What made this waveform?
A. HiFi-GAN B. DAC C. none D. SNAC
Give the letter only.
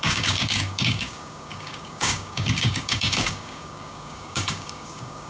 B